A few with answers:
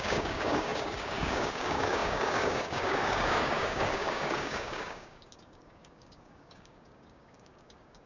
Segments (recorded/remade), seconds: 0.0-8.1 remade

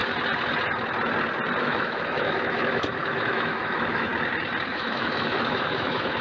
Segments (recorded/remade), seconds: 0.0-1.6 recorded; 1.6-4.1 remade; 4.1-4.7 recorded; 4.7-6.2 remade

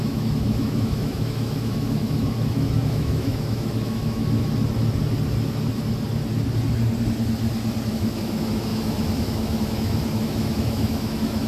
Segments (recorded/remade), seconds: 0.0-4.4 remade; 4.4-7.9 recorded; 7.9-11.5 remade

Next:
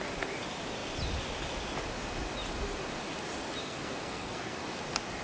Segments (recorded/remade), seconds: 0.0-3.6 recorded; 3.6-4.6 remade; 4.6-5.2 recorded

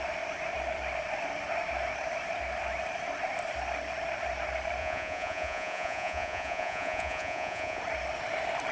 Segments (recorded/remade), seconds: 0.0-4.8 recorded; 4.8-7.8 remade; 7.8-8.7 recorded

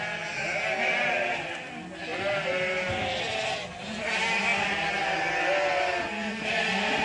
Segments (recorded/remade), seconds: 0.0-7.0 recorded

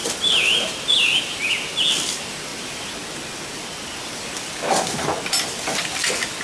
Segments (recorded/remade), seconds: 0.0-6.4 recorded